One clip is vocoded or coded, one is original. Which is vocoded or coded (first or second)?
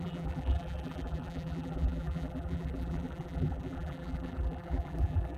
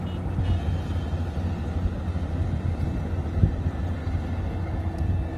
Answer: first